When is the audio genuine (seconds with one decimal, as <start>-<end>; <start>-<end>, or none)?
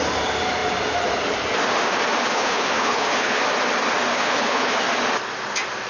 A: 0.0-2.3; 3.4-4.1; 4.8-5.9